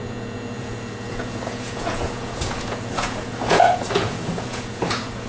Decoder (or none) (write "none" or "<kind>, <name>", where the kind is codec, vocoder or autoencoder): vocoder, Vocos